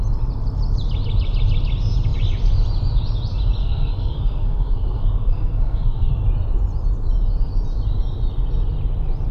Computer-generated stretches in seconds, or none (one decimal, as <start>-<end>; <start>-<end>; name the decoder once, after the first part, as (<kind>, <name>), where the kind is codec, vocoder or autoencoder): 3.6-6.1 (codec, SNAC)